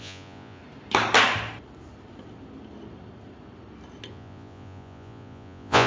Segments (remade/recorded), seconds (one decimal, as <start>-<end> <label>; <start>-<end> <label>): 0.0-0.6 remade; 0.6-4.1 recorded; 4.1-5.9 remade